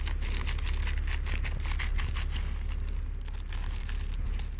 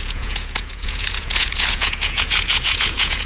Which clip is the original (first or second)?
first